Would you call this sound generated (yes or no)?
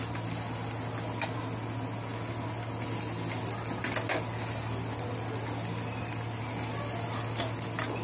no